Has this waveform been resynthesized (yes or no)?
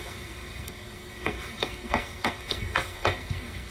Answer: yes